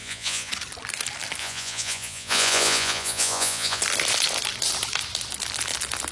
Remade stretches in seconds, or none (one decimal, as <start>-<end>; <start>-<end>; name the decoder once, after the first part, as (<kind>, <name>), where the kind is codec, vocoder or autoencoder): 0.0-0.5 (vocoder, Vocos); 1.4-3.8